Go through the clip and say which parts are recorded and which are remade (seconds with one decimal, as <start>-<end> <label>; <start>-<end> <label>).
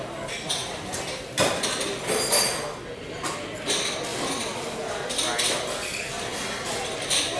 0.0-7.4 recorded